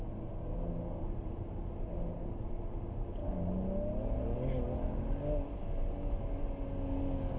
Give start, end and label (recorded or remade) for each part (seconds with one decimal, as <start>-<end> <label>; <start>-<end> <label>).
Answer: 0.0-7.4 recorded